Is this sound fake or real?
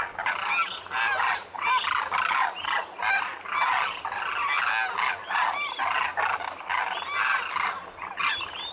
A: real